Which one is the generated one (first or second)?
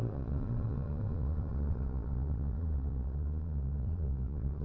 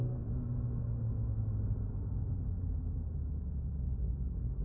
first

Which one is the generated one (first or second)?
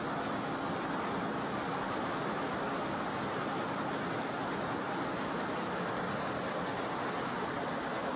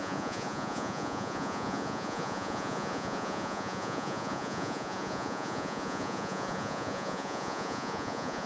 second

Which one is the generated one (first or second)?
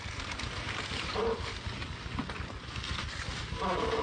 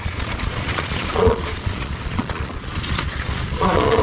second